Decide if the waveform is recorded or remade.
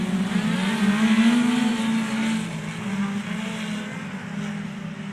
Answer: recorded